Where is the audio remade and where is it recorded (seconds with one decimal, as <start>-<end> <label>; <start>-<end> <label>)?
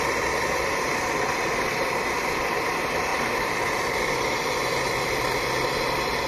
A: 0.0-3.1 remade; 3.1-4.8 recorded; 4.8-6.3 remade